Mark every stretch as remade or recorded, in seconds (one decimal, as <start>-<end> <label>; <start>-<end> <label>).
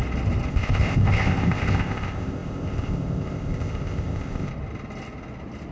0.0-0.5 recorded; 0.5-4.5 remade; 4.5-5.7 recorded